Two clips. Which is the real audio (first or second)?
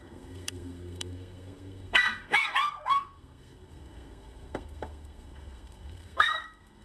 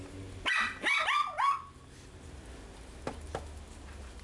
second